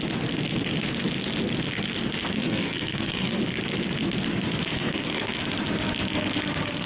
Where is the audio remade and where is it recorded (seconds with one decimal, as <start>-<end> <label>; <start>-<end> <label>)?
0.0-2.3 recorded; 2.3-3.4 remade; 3.4-4.7 recorded; 4.7-5.3 remade; 5.3-6.9 recorded